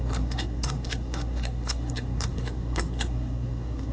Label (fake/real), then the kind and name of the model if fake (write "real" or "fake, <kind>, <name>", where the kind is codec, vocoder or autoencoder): fake, codec, SNAC